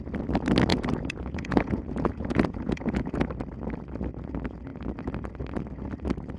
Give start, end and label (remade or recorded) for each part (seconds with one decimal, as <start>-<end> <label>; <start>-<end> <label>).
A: 0.0-0.7 recorded; 0.7-3.3 remade; 3.3-6.4 recorded